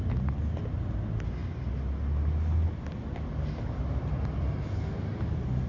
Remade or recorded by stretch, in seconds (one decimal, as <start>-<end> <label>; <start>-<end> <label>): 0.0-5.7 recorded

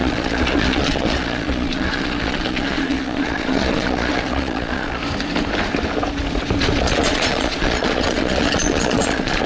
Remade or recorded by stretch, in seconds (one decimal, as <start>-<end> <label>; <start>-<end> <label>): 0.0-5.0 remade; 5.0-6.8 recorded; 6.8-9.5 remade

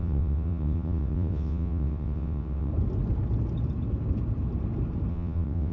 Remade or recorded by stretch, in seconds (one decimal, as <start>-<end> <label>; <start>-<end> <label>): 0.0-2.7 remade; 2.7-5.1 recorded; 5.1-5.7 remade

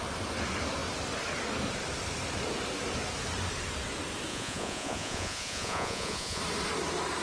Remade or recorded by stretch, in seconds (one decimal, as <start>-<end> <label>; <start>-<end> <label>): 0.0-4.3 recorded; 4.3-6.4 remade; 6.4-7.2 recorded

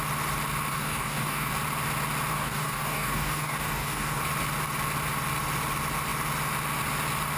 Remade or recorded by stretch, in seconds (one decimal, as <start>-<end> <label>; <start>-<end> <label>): 0.0-0.7 recorded; 0.7-1.5 remade; 1.5-2.3 recorded; 2.3-4.2 remade; 4.2-7.4 recorded

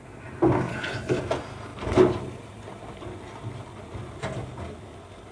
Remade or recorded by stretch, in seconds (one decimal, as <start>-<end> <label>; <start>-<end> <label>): 0.0-0.7 recorded; 0.7-1.2 remade; 1.2-5.3 recorded

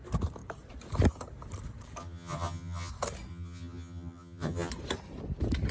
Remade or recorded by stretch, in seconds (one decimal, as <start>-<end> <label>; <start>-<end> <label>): 0.0-2.0 recorded; 2.0-2.9 remade; 2.9-3.3 recorded; 3.3-4.7 remade; 4.7-5.7 recorded